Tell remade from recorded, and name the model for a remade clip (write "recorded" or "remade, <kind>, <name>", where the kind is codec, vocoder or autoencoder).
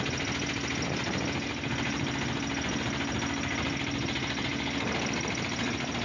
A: recorded